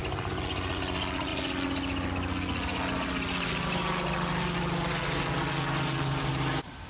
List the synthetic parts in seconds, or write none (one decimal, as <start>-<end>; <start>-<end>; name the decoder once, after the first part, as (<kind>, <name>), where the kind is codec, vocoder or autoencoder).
none

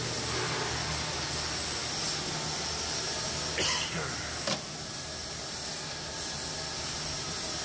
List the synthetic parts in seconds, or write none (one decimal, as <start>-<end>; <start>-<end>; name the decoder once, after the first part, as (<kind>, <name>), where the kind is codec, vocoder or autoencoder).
none

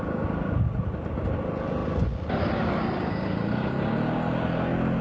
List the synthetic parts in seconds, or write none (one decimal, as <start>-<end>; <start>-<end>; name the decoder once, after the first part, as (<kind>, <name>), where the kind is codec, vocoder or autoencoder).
none

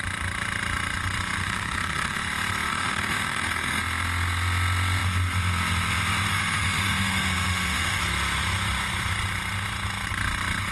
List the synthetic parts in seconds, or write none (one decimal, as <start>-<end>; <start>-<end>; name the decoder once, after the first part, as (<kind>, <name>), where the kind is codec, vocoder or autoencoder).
1.4-2.2 (autoencoder, DAC-VAE); 2.7-3.8; 6.3-8.0